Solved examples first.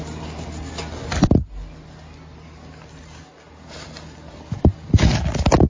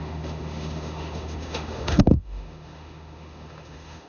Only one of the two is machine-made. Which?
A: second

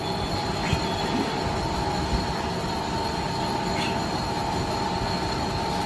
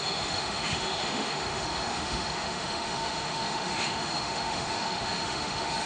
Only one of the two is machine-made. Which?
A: second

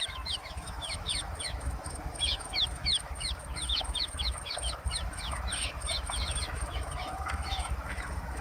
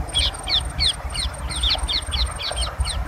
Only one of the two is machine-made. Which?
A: first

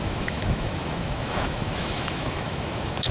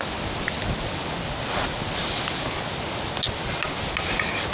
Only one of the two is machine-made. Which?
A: first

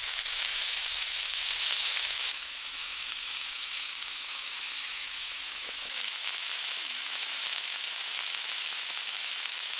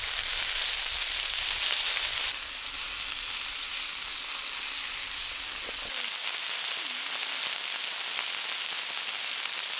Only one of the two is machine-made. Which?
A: first